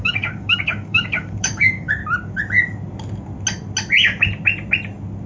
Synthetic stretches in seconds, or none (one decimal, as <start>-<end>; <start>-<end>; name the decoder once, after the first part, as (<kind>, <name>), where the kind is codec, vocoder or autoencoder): 0.0-2.0 (codec, DAC)